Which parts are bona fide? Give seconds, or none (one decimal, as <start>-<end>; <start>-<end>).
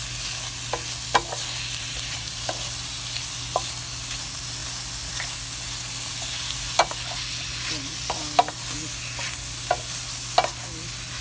0.0-1.8; 2.5-11.2